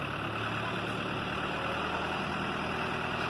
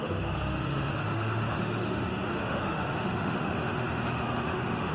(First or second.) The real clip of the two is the first